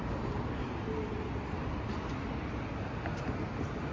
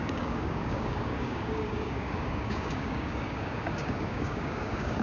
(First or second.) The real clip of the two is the first